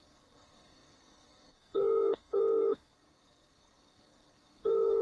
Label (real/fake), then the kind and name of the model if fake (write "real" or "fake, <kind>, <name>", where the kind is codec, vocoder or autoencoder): fake, codec, SNAC